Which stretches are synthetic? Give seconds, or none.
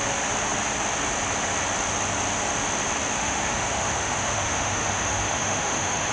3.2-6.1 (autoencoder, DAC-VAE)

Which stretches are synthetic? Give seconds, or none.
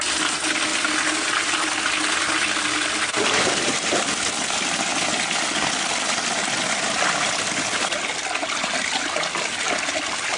none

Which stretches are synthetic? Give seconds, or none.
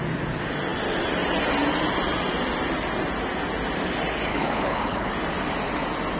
4.3-5.1 (codec, HILCodec)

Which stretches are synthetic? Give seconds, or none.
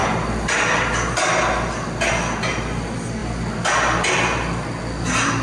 none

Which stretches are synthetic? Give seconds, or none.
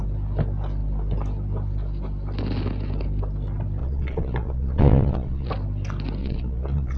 3.8-5.5 (vocoder, Vocos); 6.2-7.0